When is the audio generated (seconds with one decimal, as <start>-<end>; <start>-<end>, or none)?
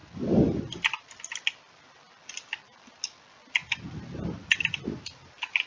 0.0-0.6